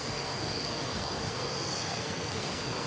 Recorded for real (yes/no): no